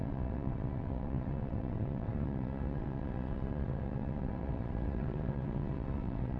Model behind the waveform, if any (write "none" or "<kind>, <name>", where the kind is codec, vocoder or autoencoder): vocoder, WaveNeXt